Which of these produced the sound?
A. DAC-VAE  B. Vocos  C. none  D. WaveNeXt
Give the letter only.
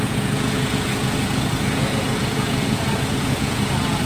B